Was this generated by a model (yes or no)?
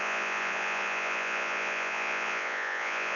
yes